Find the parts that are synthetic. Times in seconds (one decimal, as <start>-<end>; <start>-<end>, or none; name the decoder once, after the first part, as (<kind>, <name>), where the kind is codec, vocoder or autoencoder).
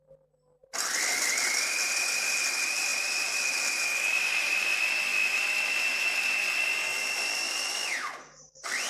none